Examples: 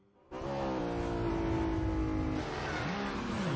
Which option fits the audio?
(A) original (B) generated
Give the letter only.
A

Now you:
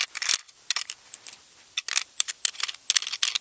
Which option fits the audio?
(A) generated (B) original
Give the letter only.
B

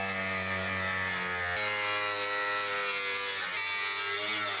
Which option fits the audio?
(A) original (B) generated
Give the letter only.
A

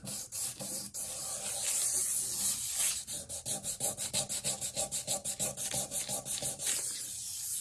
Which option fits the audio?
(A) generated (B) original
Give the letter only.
B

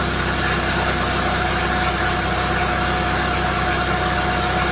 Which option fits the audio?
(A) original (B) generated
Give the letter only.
A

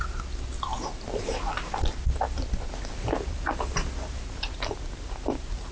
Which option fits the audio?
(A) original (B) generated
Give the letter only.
A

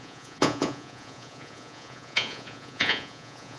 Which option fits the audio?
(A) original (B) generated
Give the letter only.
B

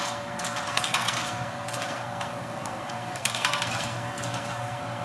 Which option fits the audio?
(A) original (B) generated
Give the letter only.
B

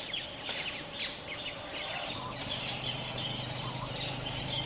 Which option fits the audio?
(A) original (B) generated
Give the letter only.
A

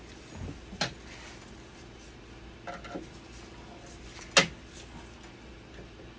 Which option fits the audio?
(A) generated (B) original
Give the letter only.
B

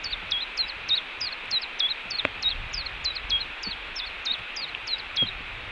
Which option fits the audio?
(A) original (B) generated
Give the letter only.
A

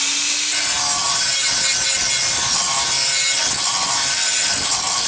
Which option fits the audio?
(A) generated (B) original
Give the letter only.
B